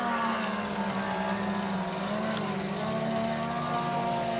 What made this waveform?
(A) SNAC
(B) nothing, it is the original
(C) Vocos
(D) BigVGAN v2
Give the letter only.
B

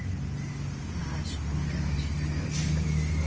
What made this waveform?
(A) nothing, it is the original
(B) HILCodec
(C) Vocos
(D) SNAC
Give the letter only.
A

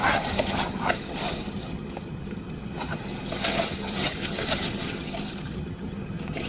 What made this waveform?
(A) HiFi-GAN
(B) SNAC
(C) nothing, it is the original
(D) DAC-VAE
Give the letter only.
A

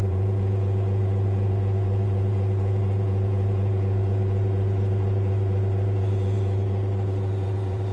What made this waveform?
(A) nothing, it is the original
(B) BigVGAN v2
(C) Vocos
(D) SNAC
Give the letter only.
C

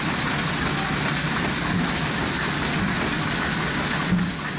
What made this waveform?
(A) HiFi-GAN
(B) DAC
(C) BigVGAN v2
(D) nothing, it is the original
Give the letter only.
D